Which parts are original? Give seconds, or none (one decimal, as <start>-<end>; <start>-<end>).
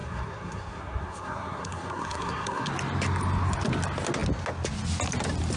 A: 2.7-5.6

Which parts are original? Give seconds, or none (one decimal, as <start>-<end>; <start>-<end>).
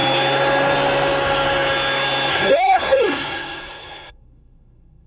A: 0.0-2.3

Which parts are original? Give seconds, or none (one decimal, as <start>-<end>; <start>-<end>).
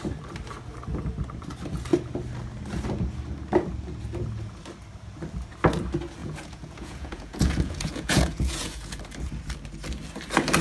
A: 0.0-6.2; 9.0-10.6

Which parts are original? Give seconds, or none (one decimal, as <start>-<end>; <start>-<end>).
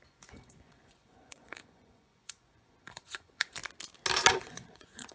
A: 3.6-4.3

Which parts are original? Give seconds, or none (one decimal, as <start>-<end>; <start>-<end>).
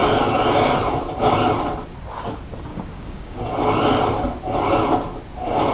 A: 0.0-2.7; 3.4-5.7